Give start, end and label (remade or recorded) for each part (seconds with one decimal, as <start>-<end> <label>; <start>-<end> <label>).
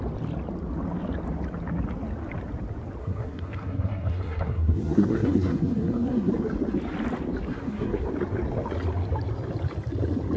0.0-3.0 recorded; 3.0-6.3 remade; 6.3-7.5 recorded; 7.5-8.1 remade; 8.1-10.4 recorded